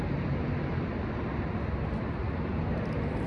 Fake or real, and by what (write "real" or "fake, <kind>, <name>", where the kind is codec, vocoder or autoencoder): real